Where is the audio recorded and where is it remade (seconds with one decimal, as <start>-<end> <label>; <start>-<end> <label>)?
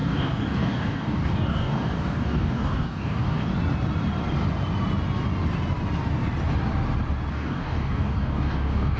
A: 0.0-3.5 remade; 3.5-7.3 recorded; 7.3-9.0 remade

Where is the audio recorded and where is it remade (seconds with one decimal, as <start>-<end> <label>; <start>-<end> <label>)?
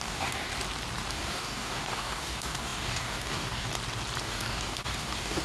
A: 0.0-0.5 remade; 0.5-1.1 recorded; 1.1-3.7 remade; 3.7-4.2 recorded; 4.2-5.4 remade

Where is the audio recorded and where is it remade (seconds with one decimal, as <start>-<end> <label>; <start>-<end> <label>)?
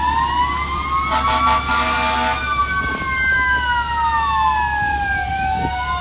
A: 0.0-6.0 recorded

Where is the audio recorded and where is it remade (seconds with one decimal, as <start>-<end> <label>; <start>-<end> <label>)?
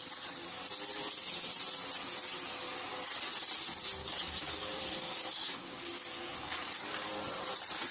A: 0.0-4.0 recorded; 4.0-7.1 remade; 7.1-7.9 recorded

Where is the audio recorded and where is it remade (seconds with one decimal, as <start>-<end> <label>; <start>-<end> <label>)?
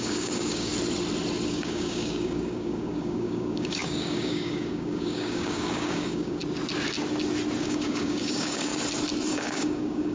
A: 0.0-0.7 remade; 0.7-1.5 recorded; 1.5-6.4 remade; 6.4-7.6 recorded; 7.6-8.7 remade; 8.7-9.3 recorded; 9.3-10.1 remade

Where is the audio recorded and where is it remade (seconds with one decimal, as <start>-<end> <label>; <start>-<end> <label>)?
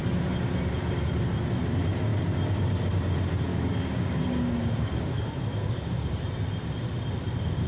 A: 0.0-3.5 recorded; 3.5-6.1 remade; 6.1-7.7 recorded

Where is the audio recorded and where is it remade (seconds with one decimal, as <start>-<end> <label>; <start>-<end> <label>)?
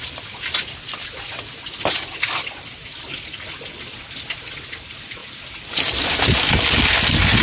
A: 0.0-7.4 recorded